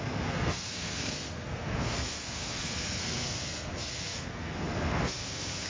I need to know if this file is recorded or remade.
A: remade